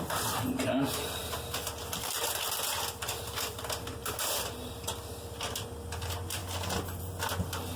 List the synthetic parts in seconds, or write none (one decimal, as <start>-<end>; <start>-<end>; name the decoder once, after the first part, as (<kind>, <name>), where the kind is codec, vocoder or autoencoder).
1.2-3.6 (vocoder, BigVGAN v2); 4.0-4.7; 6.4-7.0